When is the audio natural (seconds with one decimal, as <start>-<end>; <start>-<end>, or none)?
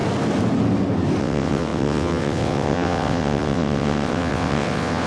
0.0-1.2